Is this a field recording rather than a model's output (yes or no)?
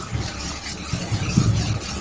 yes